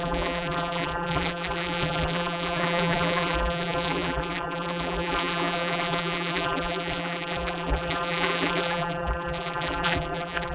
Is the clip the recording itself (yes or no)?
no